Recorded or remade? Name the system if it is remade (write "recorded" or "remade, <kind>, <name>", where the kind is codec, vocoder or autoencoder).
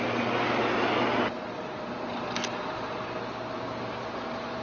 recorded